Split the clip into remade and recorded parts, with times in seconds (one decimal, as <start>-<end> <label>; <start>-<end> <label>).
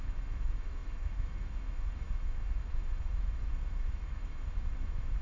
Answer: 0.0-5.2 remade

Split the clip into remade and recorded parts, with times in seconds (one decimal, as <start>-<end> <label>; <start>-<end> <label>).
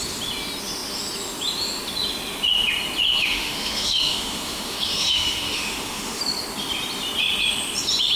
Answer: 0.0-3.2 recorded; 3.2-6.2 remade; 6.2-8.2 recorded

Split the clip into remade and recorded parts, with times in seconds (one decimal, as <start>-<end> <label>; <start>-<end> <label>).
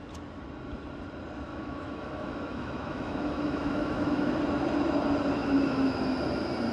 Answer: 0.0-1.5 recorded; 1.5-4.3 remade; 4.3-5.4 recorded; 5.4-6.0 remade; 6.0-6.7 recorded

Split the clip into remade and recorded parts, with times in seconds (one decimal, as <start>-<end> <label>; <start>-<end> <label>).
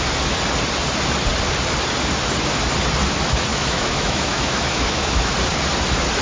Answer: 0.0-3.5 recorded; 3.5-5.3 remade; 5.3-6.2 recorded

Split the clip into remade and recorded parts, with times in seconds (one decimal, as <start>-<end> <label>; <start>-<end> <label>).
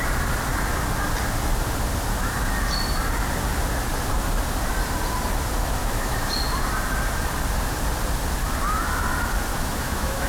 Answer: 0.0-5.8 recorded; 5.8-6.3 remade; 6.3-9.5 recorded; 9.5-10.3 remade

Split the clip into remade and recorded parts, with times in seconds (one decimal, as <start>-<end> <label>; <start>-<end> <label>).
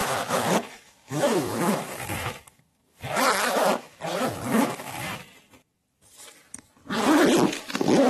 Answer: 0.0-4.0 remade; 4.0-4.5 recorded; 4.5-5.2 remade; 5.2-8.1 recorded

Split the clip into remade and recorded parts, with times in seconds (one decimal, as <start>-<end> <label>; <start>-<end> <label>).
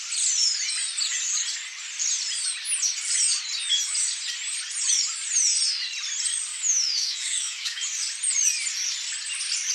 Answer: 0.0-6.5 recorded; 6.5-7.8 remade; 7.8-9.7 recorded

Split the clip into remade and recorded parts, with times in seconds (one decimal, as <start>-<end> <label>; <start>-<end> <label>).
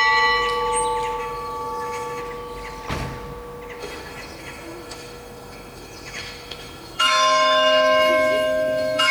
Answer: 0.0-1.2 recorded; 1.2-2.2 remade; 2.2-3.8 recorded; 3.8-9.1 remade